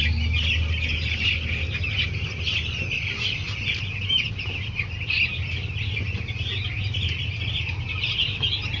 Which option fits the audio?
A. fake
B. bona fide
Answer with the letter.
B